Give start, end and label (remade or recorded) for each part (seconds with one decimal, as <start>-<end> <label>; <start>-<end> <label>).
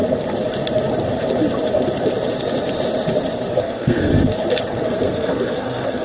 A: 0.0-3.6 recorded; 3.6-4.1 remade; 4.1-4.7 recorded; 4.7-6.0 remade